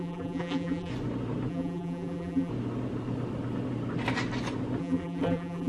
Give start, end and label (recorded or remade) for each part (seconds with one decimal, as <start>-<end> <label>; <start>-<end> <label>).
0.0-0.9 remade; 0.9-1.5 recorded; 1.5-2.5 remade; 2.5-4.8 recorded; 4.8-5.7 remade